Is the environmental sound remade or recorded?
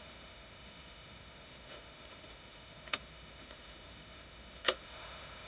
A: remade